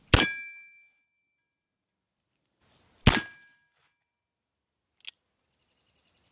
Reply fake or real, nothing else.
real